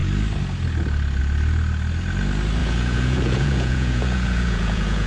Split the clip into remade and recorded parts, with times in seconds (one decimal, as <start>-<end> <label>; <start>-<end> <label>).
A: 0.0-2.6 recorded; 2.6-5.1 remade